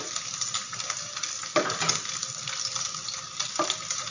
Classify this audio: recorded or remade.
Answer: recorded